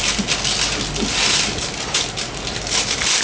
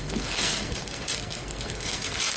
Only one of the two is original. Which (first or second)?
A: first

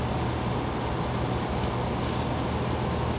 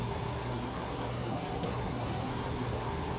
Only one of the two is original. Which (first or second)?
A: first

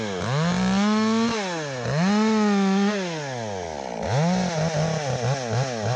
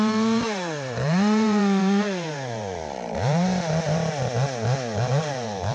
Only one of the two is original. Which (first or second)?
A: first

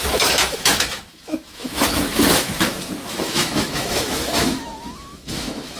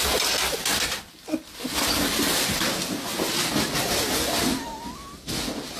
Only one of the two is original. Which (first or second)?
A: second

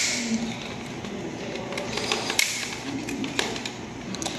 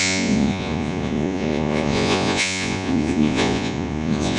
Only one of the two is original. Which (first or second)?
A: first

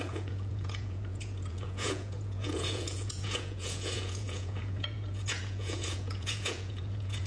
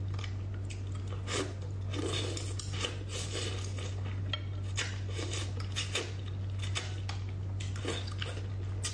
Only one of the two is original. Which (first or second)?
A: second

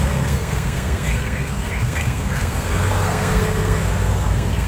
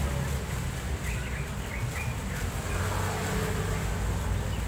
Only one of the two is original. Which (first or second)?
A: second